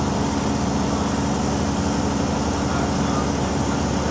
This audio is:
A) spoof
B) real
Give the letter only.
B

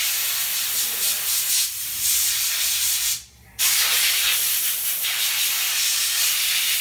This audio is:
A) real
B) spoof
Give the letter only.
B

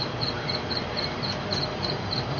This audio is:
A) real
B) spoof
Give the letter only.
B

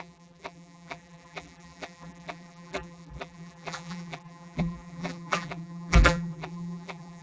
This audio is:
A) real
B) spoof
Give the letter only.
B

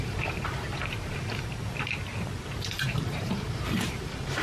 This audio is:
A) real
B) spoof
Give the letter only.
B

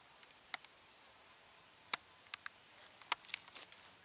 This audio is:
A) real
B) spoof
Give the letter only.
A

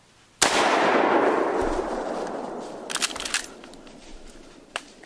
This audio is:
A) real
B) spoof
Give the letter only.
A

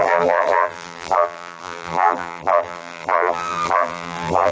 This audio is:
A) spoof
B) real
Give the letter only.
A